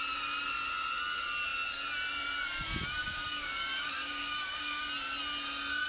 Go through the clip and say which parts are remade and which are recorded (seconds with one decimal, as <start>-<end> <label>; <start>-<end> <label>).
0.0-3.0 recorded; 3.0-4.8 remade; 4.8-5.9 recorded